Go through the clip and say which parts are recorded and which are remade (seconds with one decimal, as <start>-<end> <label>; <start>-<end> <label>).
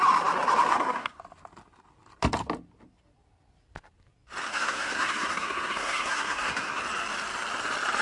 0.0-0.7 recorded; 0.7-1.2 remade; 1.2-4.5 recorded; 4.5-6.8 remade; 6.8-8.0 recorded